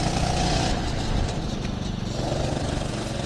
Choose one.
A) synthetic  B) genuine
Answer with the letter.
B